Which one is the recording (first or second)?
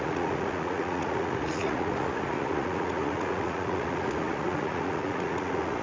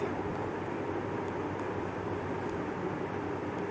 second